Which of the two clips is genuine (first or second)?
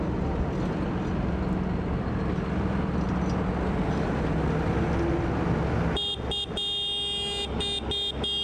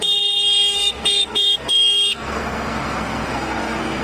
first